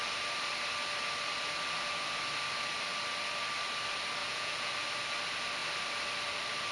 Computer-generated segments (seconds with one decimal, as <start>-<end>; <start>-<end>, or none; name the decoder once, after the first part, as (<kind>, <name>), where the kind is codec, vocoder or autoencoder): 4.2-4.7 (vocoder, Vocos)

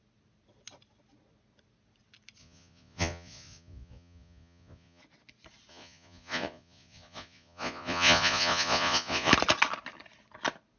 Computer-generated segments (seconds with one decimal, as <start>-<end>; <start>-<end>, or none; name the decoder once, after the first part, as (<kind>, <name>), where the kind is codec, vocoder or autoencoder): 2.4-5.0 (vocoder, Vocos); 5.7-9.3

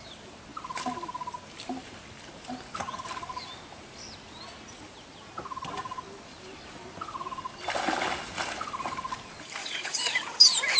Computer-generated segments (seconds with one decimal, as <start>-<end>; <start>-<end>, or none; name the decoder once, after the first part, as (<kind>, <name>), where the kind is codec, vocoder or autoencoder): 9.6-10.3 (vocoder, Vocos)

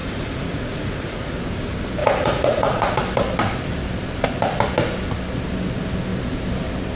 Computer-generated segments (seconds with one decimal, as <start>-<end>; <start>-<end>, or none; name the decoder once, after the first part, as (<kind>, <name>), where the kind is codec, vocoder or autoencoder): 0.0-1.4 (vocoder, Vocos); 2.0-2.9

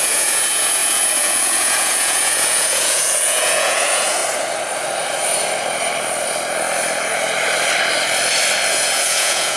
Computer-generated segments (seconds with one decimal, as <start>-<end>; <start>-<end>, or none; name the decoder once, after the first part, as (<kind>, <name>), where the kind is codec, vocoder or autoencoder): 0.0-4.2 (vocoder, Vocos); 8.7-9.6

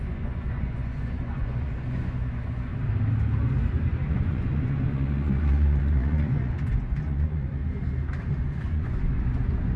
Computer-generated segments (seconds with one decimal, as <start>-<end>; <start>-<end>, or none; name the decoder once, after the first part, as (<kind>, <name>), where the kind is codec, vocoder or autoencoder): 0.0-2.7 (vocoder, Vocos); 4.1-7.6; 8.3-9.8